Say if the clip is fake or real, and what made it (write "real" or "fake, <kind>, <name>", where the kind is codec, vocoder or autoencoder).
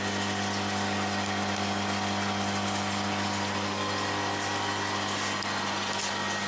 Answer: real